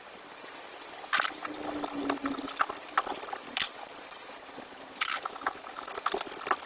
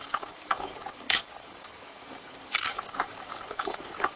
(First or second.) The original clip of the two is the first